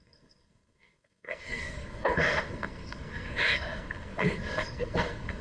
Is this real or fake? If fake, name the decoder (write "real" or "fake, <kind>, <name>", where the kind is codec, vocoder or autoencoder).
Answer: fake, codec, SNAC